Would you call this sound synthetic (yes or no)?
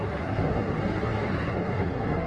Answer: yes